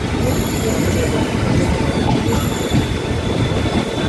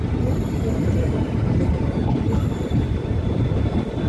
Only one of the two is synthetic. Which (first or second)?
second